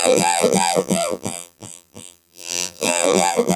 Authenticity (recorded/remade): remade